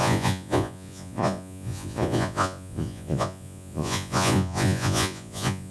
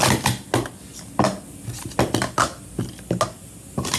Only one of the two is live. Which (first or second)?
second